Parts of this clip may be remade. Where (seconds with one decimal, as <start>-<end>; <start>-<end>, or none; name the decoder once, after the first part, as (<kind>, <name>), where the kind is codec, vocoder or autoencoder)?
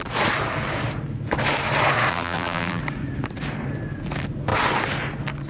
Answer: 2.1-2.8 (vocoder, BigVGAN v2)